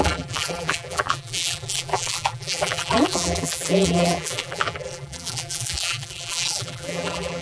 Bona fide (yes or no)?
no